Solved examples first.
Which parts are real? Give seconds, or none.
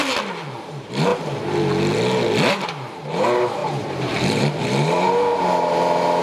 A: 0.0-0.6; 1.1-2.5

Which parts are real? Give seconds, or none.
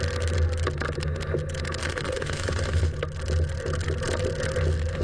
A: 0.0-1.8; 2.8-5.0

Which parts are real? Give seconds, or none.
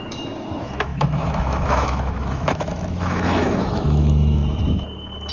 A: 4.4-5.3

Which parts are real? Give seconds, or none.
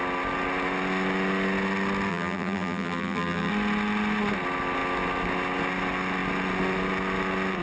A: 0.0-2.1; 3.5-7.6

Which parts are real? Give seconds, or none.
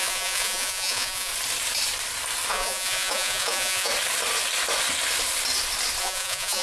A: 1.3-2.5; 3.9-6.0